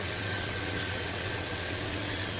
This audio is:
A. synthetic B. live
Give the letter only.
A